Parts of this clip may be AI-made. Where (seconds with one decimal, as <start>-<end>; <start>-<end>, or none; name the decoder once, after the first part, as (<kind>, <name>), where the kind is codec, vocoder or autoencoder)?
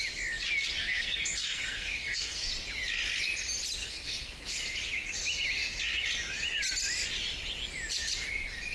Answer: 0.8-2.5 (codec, SNAC); 3.8-4.5